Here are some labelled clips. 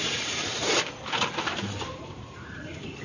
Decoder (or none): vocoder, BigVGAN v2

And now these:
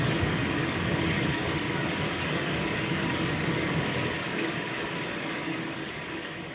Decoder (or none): codec, DAC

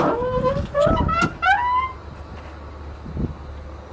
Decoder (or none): none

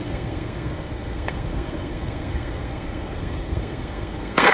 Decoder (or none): codec, SNAC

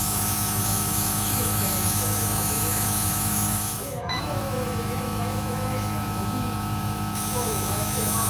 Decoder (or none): autoencoder, DAC-VAE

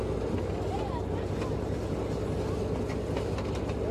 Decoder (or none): none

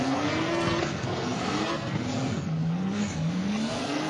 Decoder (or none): codec, SNAC